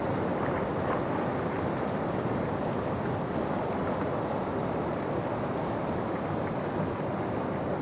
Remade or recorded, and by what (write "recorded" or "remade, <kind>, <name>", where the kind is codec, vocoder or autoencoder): recorded